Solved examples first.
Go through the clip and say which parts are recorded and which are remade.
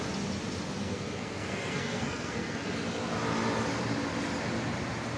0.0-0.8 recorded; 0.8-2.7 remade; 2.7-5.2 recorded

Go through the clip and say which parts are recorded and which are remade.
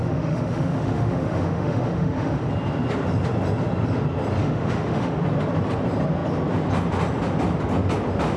0.0-2.4 remade; 2.4-4.4 recorded; 4.4-5.2 remade; 5.2-8.4 recorded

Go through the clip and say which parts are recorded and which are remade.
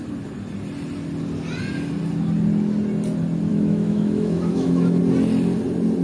0.0-3.5 recorded; 3.5-5.0 remade; 5.0-6.0 recorded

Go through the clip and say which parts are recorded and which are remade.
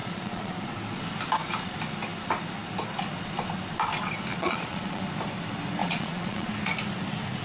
0.0-0.5 remade; 0.5-4.3 recorded; 4.3-5.0 remade; 5.0-5.8 recorded; 5.8-6.5 remade; 6.5-7.4 recorded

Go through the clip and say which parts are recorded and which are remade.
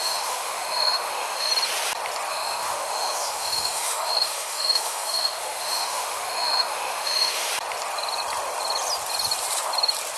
0.0-1.5 remade; 1.5-2.3 recorded; 2.3-7.5 remade; 7.5-10.2 recorded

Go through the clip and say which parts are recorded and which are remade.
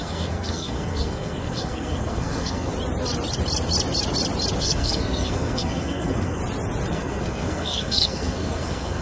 0.0-2.7 remade; 2.7-4.6 recorded; 4.6-6.4 remade; 6.4-6.9 recorded; 6.9-9.0 remade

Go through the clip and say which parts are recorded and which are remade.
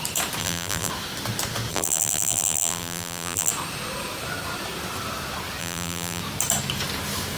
0.0-0.4 recorded; 0.4-0.9 remade; 0.9-1.7 recorded; 1.7-3.5 remade; 3.5-5.6 recorded; 5.6-6.2 remade; 6.2-7.4 recorded